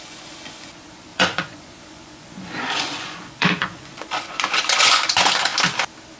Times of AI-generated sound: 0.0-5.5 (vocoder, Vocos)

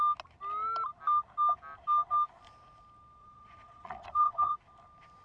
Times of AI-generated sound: 3.2-4.6 (vocoder, Vocos)

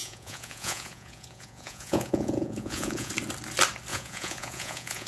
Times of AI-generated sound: 0.0-3.1 (vocoder, Vocos); 3.9-5.1

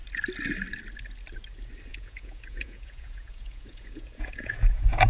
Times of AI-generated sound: 1.9-5.1 (vocoder, Vocos)

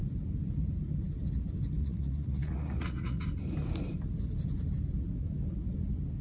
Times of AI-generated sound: 1.8-3.2 (vocoder, Vocos)